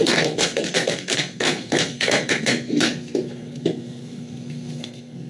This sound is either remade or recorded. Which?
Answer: remade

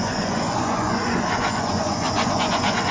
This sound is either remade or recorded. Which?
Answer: remade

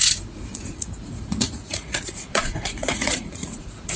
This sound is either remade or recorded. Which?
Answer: remade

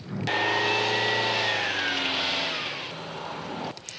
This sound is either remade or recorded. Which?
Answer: recorded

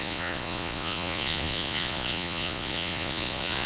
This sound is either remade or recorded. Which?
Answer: remade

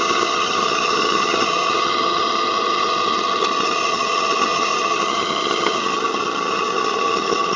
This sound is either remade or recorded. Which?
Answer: remade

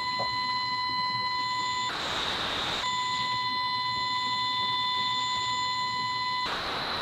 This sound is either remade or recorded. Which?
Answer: recorded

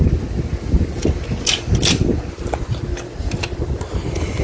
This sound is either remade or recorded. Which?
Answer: recorded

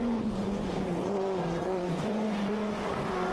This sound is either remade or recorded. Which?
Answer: remade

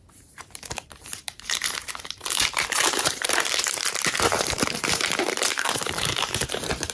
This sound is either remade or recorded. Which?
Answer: remade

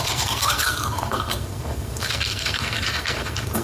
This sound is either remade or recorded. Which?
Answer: remade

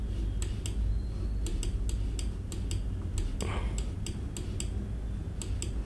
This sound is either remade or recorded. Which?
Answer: recorded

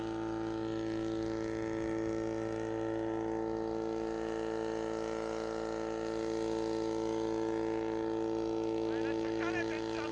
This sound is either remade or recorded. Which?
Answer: recorded